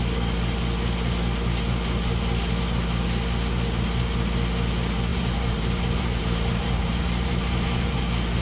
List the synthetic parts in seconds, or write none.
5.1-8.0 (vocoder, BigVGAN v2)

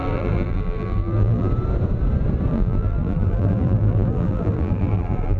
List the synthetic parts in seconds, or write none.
0.0-1.5 (vocoder, BigVGAN v2); 2.5-5.4